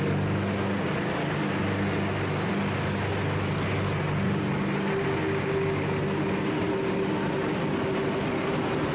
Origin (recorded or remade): recorded